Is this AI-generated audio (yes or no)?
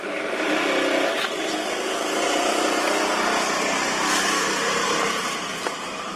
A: no